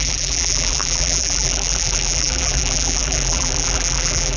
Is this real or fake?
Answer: fake